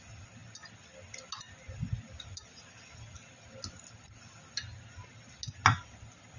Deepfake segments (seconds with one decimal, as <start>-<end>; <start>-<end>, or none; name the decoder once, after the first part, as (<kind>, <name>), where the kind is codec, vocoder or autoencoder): none